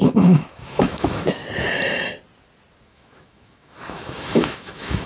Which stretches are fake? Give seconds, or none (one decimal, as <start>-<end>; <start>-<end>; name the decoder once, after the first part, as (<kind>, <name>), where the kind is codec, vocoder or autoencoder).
0.0-1.4 (autoencoder, DAC-VAE); 2.8-5.1